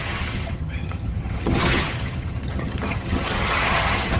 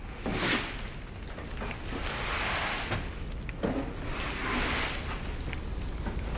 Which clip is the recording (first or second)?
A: second